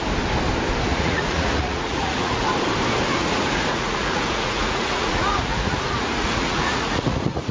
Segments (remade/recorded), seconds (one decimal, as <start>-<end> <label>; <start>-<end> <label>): 0.0-0.9 recorded; 0.9-2.4 remade; 2.4-3.2 recorded; 3.2-7.5 remade